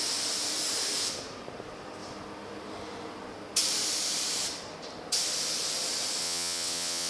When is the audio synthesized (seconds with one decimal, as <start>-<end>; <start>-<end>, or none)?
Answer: 6.2-7.1